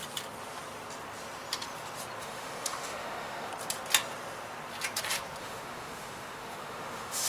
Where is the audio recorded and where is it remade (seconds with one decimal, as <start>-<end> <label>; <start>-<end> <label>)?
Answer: 0.0-2.2 recorded; 2.2-3.5 remade; 3.5-5.4 recorded; 5.4-7.3 remade